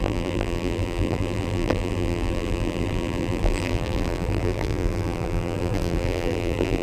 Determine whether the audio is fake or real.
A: fake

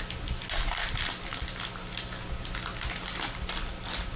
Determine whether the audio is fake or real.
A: real